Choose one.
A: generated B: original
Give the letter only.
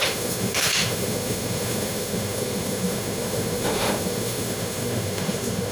A